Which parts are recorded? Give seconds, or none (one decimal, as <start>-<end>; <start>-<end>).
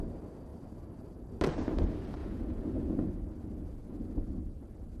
0.0-2.2; 3.1-3.8; 4.3-5.0